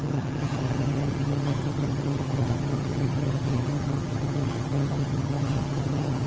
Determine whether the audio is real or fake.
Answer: fake